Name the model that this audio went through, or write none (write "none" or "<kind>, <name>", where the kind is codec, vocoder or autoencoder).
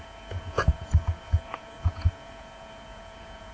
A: vocoder, Vocos